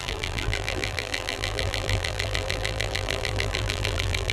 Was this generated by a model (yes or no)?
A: yes